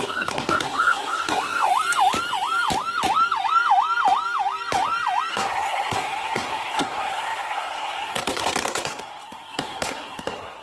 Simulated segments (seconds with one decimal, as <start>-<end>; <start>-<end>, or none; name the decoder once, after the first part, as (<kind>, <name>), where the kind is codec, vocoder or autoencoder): 0.0-1.7 (codec, SNAC); 5.3-10.6